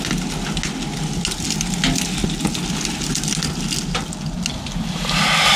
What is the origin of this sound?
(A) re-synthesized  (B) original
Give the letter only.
B